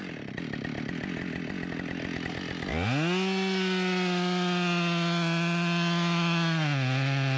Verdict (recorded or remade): recorded